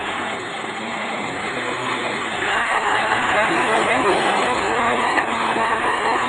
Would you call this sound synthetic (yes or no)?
yes